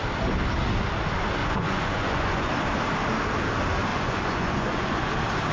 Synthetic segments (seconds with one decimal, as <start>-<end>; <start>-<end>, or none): 1.4-2.5; 3.9-5.1